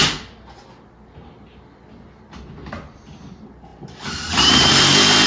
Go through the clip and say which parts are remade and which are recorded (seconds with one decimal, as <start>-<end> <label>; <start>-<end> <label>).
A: 0.0-3.7 recorded; 3.7-5.3 remade